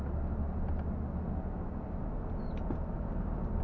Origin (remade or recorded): recorded